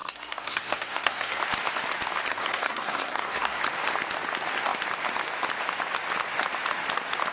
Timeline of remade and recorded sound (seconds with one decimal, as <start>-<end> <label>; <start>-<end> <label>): 0.0-1.4 remade; 1.4-2.3 recorded; 2.3-3.6 remade; 3.6-7.3 recorded